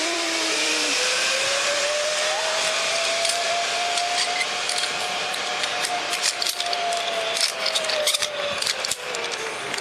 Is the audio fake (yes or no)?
yes